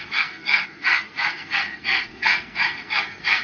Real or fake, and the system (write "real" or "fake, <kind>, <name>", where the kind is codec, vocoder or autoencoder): fake, codec, SNAC